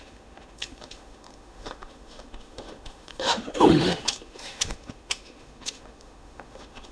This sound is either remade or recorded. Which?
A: remade